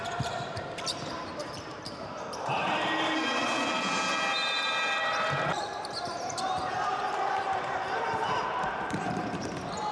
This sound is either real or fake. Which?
fake